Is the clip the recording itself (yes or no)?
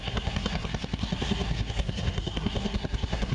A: no